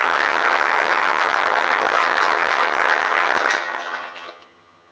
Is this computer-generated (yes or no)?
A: yes